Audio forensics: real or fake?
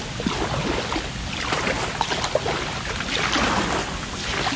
real